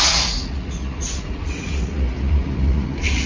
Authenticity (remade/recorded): remade